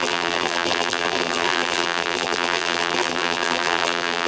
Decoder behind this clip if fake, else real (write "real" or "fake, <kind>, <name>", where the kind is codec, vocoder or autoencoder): fake, vocoder, BigVGAN v2